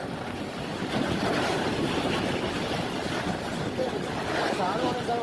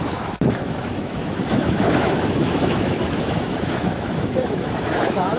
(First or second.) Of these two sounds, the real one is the first